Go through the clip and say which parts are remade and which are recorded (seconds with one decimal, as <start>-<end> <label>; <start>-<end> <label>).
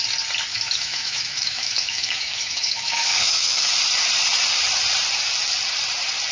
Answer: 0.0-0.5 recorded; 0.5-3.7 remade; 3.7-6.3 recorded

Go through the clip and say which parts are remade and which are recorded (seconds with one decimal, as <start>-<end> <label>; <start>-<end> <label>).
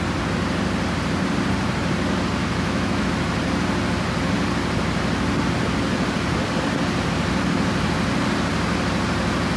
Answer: 0.0-2.4 recorded; 2.4-3.1 remade; 3.1-9.6 recorded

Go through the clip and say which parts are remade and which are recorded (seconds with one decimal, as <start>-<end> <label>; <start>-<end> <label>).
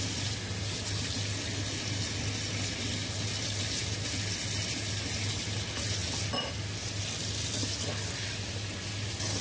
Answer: 0.0-9.4 recorded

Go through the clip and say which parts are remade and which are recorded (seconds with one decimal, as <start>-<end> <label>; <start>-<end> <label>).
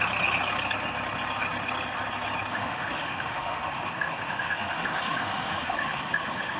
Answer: 0.0-2.5 recorded; 2.5-6.6 remade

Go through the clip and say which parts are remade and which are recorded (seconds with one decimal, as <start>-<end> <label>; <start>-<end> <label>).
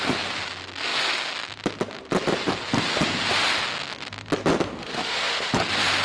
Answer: 0.0-4.8 recorded; 4.8-5.5 remade; 5.5-6.0 recorded